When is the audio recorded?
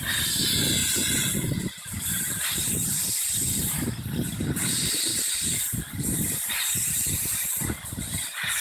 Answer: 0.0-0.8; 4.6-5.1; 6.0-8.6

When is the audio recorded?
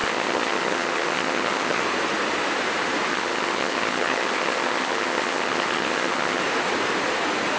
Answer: 1.8-3.1; 6.4-7.6